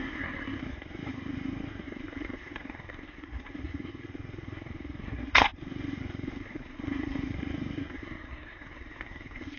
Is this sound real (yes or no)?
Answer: no